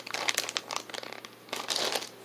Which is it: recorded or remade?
recorded